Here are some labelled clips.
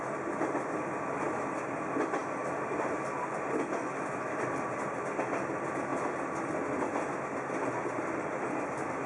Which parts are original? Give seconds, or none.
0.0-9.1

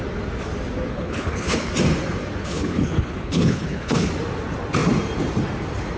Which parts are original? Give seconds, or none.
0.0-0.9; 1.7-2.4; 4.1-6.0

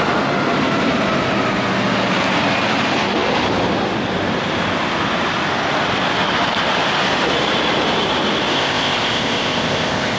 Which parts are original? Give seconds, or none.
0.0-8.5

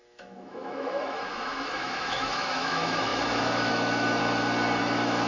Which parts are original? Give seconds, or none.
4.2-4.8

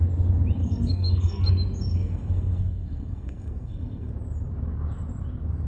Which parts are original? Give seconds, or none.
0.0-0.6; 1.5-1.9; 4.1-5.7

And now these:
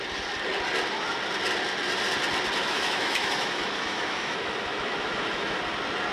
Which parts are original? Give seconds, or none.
0.0-2.6; 5.6-6.1

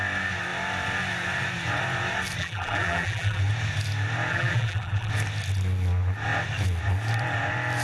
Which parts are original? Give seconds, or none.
0.0-2.4; 3.4-4.3; 5.1-7.8

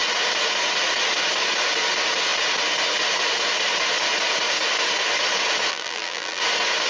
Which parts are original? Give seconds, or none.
0.0-5.7; 6.4-6.9